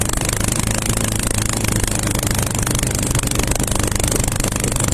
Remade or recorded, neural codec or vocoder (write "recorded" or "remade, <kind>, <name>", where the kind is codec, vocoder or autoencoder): recorded